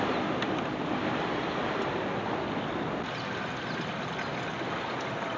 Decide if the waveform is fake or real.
real